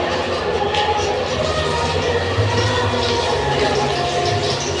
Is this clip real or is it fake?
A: real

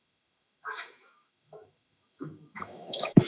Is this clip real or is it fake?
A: fake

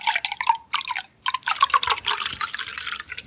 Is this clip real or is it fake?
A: real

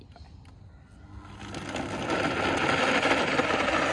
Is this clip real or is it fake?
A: real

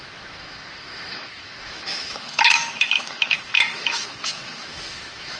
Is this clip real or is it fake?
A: fake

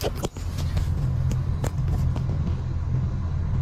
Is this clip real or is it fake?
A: real